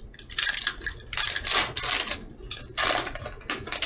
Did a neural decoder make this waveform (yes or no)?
no